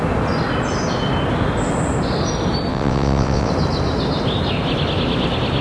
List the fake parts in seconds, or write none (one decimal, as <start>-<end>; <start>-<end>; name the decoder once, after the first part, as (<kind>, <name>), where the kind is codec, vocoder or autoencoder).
2.7-3.5 (vocoder, WaveNeXt)